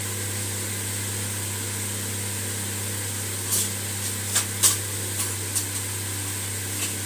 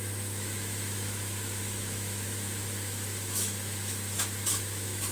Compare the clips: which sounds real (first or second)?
first